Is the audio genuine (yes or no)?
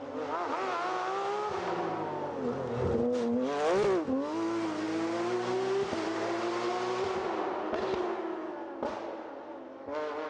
yes